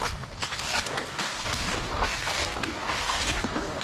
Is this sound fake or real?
fake